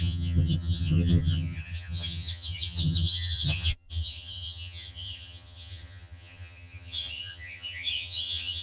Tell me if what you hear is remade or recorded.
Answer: remade